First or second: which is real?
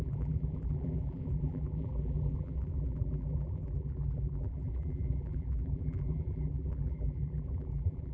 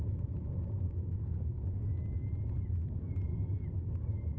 second